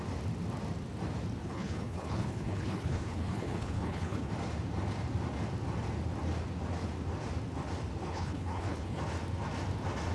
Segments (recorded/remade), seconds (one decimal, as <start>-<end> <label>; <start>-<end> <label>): 0.0-1.4 recorded; 1.4-4.3 remade; 4.3-8.0 recorded; 8.0-9.0 remade; 9.0-10.1 recorded